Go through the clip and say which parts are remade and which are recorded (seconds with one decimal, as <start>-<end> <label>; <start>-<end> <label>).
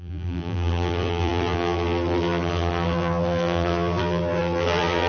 0.0-5.1 remade